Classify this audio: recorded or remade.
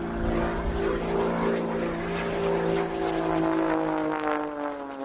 recorded